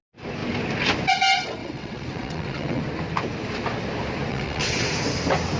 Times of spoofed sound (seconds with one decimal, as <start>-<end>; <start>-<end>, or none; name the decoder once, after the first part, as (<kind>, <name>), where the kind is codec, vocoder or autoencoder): 1.6-2.8 (vocoder, WaveNeXt); 4.3-4.9